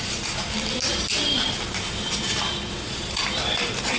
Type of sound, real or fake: real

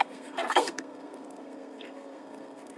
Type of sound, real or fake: fake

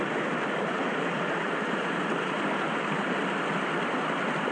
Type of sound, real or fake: real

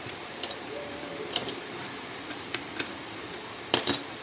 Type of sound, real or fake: fake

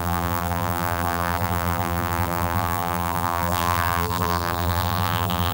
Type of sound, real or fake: fake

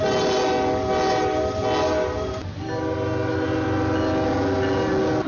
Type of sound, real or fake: real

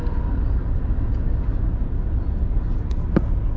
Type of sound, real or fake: real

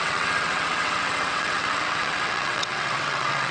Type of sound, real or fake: fake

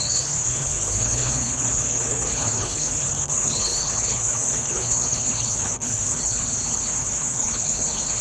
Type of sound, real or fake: fake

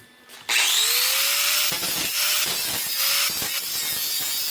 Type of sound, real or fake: real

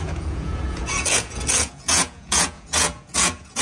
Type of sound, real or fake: fake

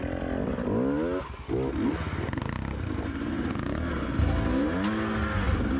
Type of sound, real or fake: real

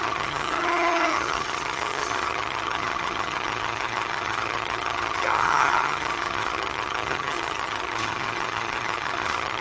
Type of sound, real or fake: fake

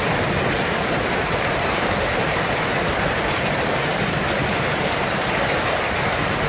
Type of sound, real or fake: fake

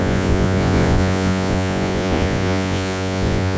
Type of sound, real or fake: fake